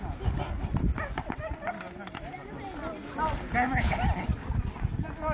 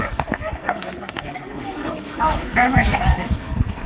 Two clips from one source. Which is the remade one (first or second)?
second